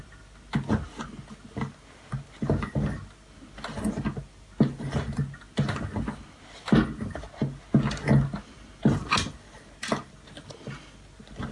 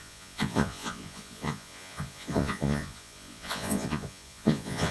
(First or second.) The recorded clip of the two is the first